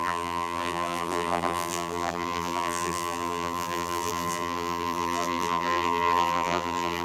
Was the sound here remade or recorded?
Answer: remade